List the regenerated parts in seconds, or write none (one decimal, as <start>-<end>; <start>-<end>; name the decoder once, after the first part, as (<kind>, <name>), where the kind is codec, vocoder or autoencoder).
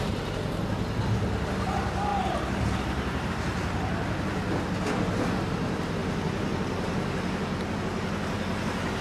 2.1-3.3 (vocoder, BigVGAN v2)